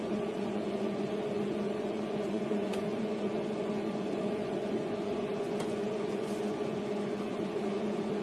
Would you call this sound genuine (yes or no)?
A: no